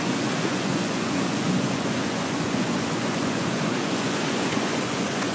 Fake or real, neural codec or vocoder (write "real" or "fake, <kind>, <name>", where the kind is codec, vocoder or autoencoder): fake, vocoder, Vocos